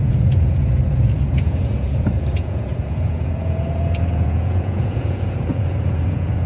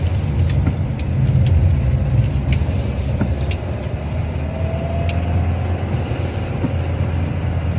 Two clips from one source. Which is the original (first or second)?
second